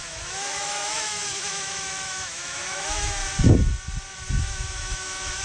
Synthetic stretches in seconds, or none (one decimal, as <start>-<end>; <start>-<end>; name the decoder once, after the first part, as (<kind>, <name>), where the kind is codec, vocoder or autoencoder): 0.0-3.2 (autoencoder, DAC-VAE); 4.4-5.4